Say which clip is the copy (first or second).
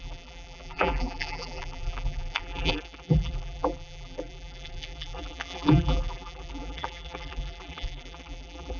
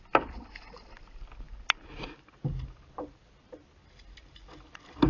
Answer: first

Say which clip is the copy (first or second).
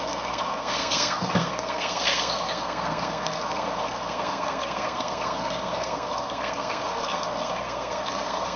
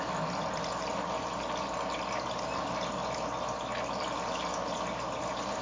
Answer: first